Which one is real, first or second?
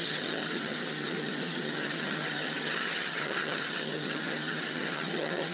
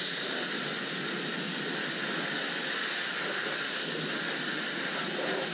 second